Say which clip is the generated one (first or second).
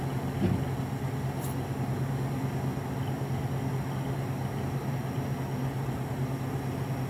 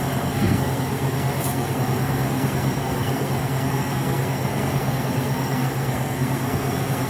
second